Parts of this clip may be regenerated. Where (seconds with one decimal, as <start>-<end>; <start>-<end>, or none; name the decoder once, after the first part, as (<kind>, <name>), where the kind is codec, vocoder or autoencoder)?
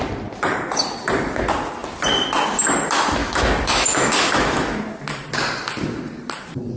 3.2-4.8 (autoencoder, DAC-VAE)